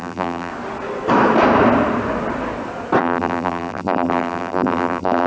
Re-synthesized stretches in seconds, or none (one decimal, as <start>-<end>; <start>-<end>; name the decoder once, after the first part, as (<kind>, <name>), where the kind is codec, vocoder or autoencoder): 0.0-0.5 (vocoder, BigVGAN v2); 3.0-5.3